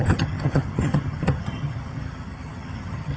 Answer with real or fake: fake